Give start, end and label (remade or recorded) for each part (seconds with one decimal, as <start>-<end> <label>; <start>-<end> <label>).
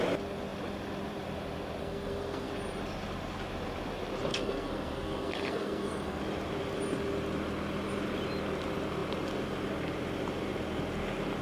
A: 0.0-1.8 recorded; 1.8-2.5 remade; 2.5-4.3 recorded; 4.3-6.2 remade; 6.2-11.4 recorded